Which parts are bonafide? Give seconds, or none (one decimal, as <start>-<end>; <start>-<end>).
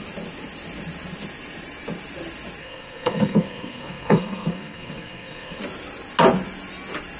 0.0-2.6; 5.6-7.2